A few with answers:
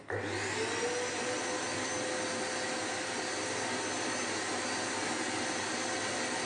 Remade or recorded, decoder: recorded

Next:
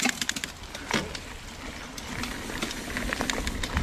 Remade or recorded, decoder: recorded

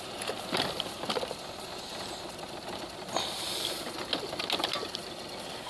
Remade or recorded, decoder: recorded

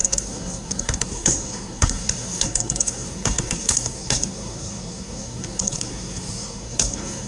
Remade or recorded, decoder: remade, codec, SNAC